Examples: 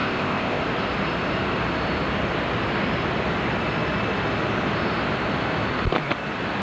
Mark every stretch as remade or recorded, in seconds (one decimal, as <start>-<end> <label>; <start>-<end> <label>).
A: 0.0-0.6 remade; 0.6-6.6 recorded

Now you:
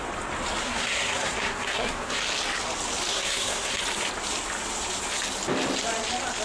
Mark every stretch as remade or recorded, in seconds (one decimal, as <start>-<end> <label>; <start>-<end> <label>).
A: 0.0-0.6 recorded; 0.6-2.2 remade; 2.2-3.1 recorded; 3.1-3.8 remade; 3.8-6.4 recorded

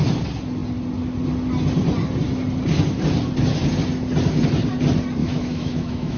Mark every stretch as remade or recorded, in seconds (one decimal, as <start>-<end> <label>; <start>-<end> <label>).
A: 0.0-5.2 recorded; 5.2-6.2 remade

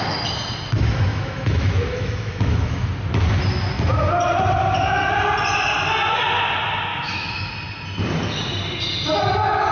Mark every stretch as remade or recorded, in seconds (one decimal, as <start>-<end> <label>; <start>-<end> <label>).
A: 0.0-1.1 recorded; 1.1-2.9 remade; 2.9-6.9 recorded; 6.9-7.5 remade; 7.5-9.7 recorded